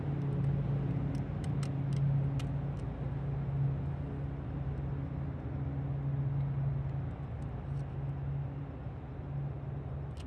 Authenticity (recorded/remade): recorded